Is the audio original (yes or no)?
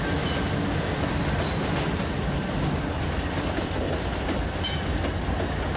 yes